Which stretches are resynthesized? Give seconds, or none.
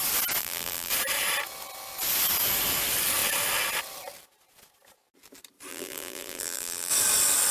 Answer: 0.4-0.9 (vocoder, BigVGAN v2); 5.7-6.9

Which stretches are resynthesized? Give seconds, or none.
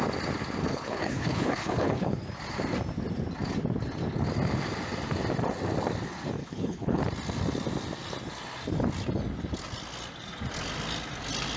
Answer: 0.6-2.2 (codec, HILCodec); 6.4-7.0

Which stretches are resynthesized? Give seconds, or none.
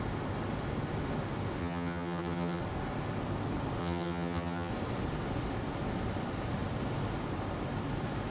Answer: 1.6-2.6 (vocoder, HiFi-GAN); 3.8-4.7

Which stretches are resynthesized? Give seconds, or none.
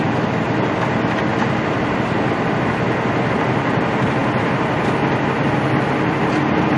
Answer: none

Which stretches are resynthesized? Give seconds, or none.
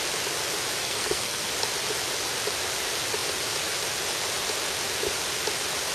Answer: 0.8-1.5 (codec, SNAC)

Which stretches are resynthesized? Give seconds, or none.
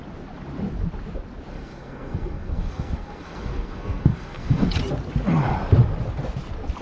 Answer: 1.5-4.7 (codec, SNAC)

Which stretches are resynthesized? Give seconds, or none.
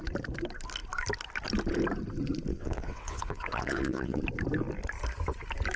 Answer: 2.5-4.2 (vocoder, WaveNeXt)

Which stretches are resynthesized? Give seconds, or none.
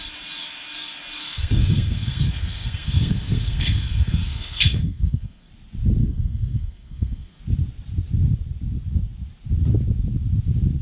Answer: 1.2-5.5 (codec, SNAC); 6.0-7.4